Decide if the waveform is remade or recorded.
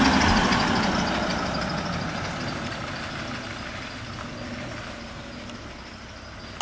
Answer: recorded